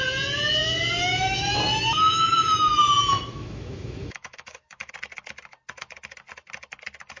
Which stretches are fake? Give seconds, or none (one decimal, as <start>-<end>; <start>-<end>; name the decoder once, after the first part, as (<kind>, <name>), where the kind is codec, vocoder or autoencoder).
0.6-4.9 (autoencoder, DAC-VAE)